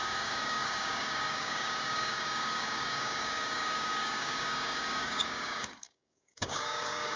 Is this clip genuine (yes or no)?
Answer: no